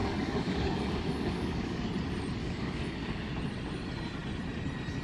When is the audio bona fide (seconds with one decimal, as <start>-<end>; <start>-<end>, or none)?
1.8-2.4; 3.3-5.0